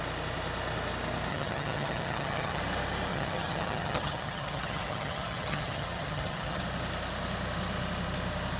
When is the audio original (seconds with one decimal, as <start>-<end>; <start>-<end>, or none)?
0.0-1.3; 2.6-3.1; 6.6-8.6